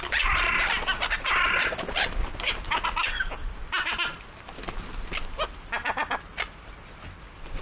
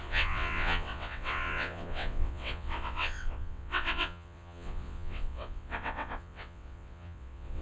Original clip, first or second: first